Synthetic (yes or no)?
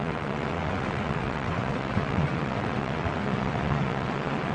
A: yes